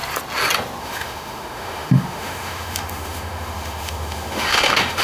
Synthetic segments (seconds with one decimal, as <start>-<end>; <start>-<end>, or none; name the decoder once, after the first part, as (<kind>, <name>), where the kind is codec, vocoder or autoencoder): 0.8-5.0 (autoencoder, DAC-VAE)